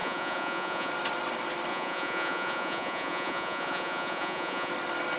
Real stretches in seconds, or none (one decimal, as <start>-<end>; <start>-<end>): 0.9-1.7; 4.7-5.2